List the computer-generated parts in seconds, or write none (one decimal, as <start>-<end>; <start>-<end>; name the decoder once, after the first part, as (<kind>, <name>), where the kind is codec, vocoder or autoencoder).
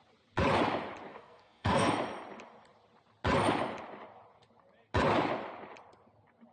1.1-1.9 (codec, SNAC)